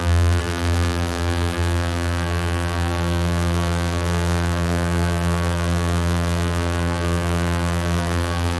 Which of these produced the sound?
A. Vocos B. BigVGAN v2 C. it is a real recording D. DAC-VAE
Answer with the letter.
B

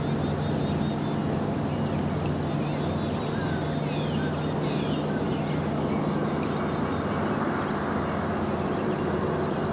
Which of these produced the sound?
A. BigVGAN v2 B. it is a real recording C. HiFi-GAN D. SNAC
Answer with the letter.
B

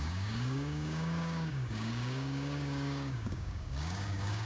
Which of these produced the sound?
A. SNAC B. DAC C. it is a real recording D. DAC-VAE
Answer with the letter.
B